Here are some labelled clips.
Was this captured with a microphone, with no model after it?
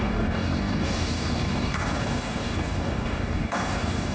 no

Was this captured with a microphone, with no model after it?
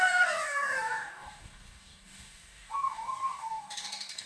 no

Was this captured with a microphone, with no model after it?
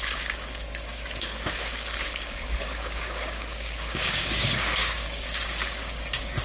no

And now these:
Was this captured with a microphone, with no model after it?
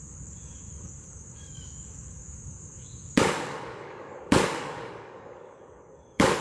no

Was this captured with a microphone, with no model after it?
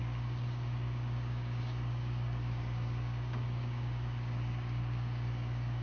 no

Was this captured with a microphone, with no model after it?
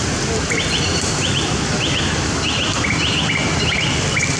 yes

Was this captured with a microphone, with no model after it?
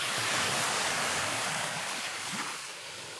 no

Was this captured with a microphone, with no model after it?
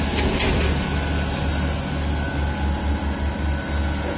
yes